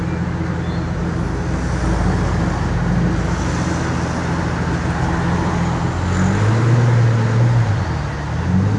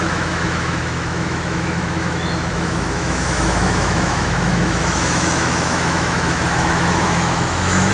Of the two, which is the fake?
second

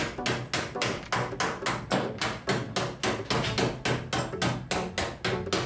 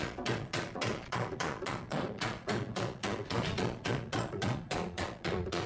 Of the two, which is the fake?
second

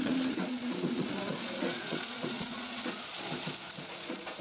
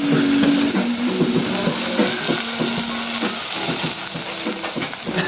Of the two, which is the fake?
first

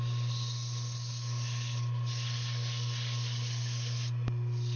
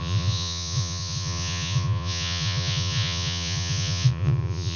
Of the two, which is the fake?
second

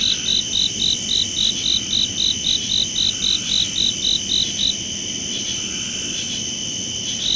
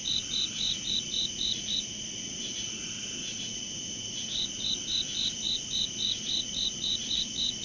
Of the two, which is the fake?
second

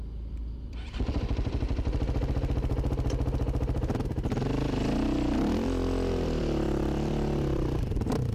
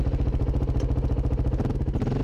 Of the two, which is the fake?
first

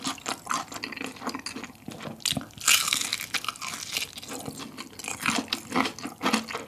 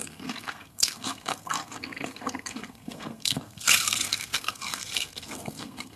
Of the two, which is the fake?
second